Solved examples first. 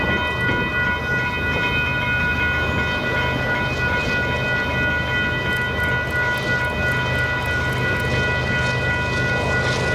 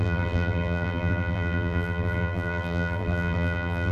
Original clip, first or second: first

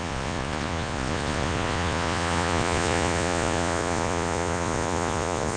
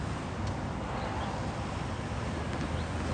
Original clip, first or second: second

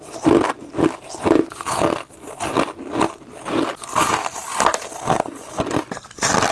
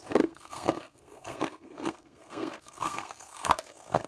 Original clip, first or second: first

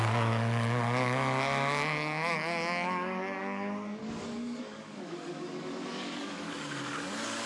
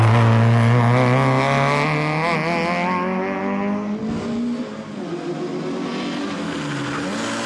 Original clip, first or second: second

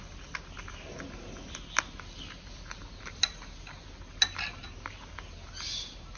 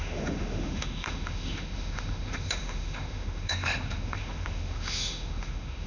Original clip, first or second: first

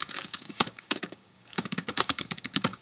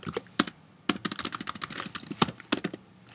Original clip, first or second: second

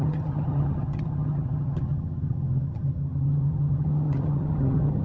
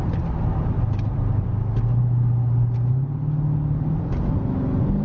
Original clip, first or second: second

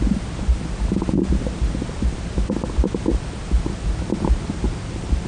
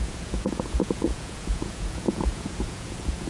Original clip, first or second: first